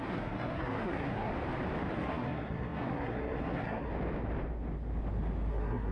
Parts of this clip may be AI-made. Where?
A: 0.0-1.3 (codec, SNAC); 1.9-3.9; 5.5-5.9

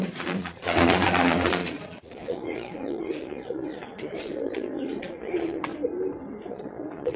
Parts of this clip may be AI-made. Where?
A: 0.0-5.7 (vocoder, Vocos); 6.5-7.2

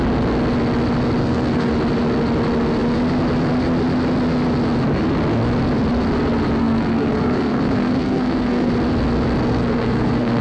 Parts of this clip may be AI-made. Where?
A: 1.2-1.7 (codec, SNAC); 6.6-8.7; 9.5-10.4

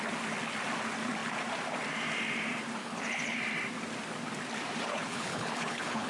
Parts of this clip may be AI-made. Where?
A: 2.8-3.4 (codec, HILCodec); 4.9-6.1